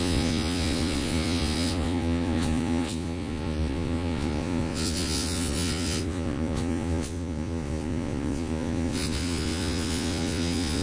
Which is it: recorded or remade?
remade